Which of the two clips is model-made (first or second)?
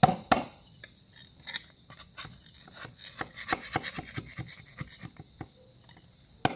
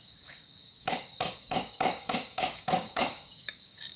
second